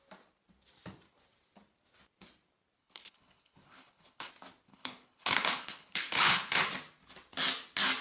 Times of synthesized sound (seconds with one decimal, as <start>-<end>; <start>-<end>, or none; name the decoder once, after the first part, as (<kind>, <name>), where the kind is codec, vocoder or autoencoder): 2.8-4.3 (codec, HILCodec); 4.7-6.6